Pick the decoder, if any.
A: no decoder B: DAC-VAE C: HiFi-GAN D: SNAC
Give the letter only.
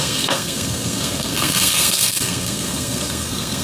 D